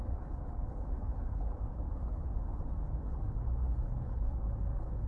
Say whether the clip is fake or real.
fake